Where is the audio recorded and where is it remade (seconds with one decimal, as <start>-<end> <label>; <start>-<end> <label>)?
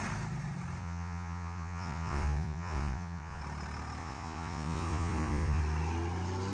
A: 0.0-0.8 recorded; 0.8-3.4 remade; 3.4-4.0 recorded; 4.0-5.6 remade; 5.6-6.5 recorded